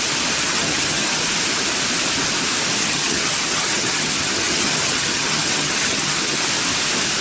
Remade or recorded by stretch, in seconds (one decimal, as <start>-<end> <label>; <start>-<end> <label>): 0.0-0.5 recorded; 0.5-1.2 remade; 1.2-2.8 recorded; 2.8-6.4 remade; 6.4-7.2 recorded